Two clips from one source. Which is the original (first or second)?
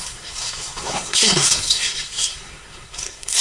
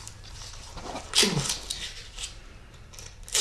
second